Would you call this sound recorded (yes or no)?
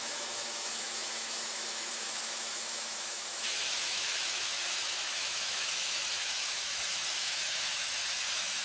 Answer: no